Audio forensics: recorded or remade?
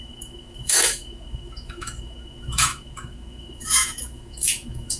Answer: remade